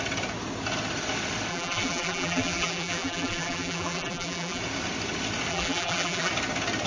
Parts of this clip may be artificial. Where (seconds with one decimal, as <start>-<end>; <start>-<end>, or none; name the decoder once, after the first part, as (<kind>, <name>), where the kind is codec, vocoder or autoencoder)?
1.5-4.6 (vocoder, BigVGAN v2); 5.5-6.3